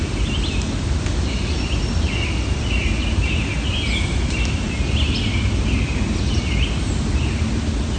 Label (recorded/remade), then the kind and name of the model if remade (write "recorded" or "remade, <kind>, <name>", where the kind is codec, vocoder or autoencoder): recorded